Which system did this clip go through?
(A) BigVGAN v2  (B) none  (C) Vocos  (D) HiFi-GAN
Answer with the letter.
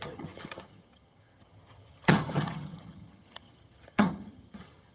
D